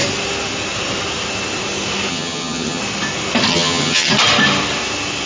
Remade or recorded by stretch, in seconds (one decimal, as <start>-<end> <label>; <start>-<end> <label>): 0.0-2.1 recorded; 2.1-2.8 remade; 2.8-3.5 recorded; 3.5-4.1 remade; 4.1-5.3 recorded